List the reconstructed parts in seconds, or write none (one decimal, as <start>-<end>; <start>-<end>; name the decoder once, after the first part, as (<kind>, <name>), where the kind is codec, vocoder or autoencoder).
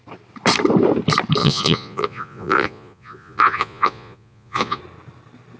1.4-4.8 (vocoder, Vocos)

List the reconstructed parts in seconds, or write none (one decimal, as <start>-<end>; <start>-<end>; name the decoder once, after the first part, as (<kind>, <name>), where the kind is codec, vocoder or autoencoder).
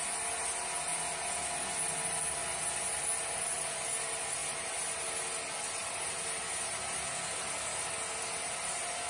none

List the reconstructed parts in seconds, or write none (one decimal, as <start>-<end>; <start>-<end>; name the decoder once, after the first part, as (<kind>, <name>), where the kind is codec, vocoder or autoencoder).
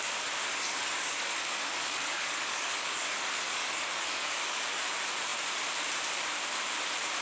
0.5-4.8 (codec, DAC)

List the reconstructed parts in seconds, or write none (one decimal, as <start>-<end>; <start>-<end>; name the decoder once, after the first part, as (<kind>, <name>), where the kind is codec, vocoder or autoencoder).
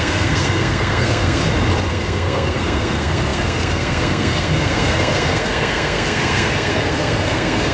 0.0-1.4 (codec, SNAC); 1.9-7.7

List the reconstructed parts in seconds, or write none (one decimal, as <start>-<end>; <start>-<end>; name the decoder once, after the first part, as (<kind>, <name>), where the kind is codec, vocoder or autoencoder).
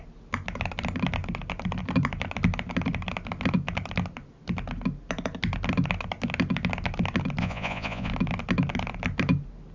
7.4-8.1 (vocoder, Vocos)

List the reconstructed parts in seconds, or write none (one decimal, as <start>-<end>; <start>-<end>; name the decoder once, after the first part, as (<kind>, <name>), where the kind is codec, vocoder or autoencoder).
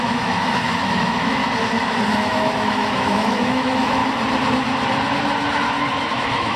0.0-1.4 (autoencoder, DAC-VAE); 2.1-4.0; 6.1-6.6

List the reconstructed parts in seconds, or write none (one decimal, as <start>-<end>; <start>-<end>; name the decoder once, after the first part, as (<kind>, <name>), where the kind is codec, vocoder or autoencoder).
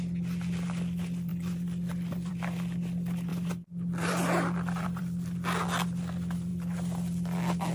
1.3-2.3 (vocoder, BigVGAN v2); 3.3-5.0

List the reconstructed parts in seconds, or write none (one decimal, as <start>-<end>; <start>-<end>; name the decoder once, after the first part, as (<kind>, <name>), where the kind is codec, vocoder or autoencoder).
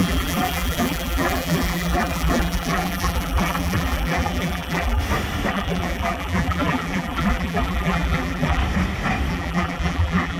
0.0-5.0 (vocoder, BigVGAN v2); 5.5-8.6; 9.3-10.4